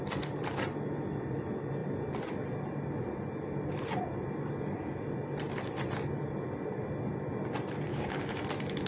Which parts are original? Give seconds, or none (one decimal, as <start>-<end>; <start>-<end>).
0.0-7.9; 8.4-8.9